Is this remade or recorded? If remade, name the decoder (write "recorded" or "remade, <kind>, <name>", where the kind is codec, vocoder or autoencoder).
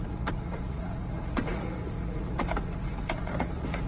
remade, vocoder, Vocos